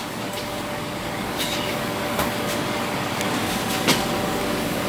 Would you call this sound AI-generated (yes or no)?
yes